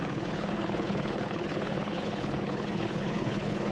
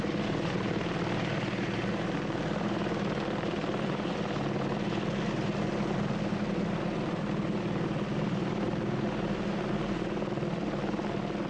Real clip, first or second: second